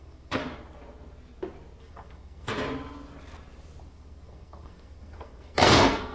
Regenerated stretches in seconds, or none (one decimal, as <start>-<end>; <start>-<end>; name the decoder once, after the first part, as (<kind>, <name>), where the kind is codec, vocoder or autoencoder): 0.0-0.4 (codec, SNAC); 1.8-2.5; 3.9-6.1